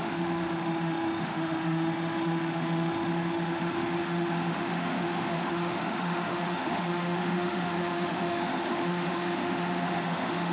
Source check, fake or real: fake